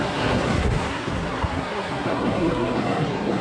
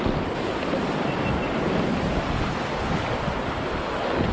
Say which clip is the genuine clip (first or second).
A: second